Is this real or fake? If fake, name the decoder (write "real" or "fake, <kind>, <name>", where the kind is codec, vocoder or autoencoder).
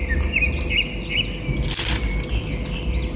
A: real